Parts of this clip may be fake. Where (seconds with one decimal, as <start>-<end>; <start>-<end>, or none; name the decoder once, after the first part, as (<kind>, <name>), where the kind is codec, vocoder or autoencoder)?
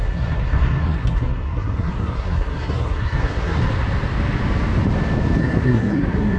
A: 0.0-3.6 (codec, SNAC); 5.4-6.4